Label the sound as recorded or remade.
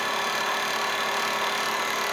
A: recorded